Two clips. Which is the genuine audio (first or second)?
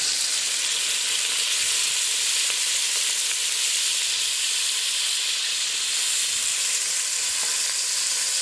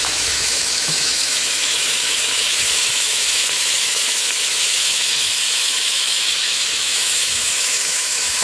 first